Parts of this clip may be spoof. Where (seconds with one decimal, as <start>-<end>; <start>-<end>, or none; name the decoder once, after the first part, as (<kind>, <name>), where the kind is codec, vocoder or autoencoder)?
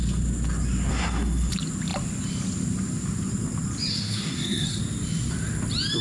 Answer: 0.9-1.5 (codec, SNAC); 3.9-4.8